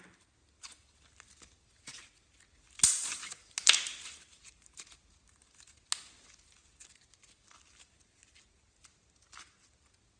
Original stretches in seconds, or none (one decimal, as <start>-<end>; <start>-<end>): 0.0-10.2